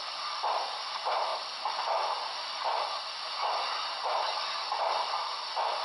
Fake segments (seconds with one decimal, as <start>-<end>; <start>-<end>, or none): none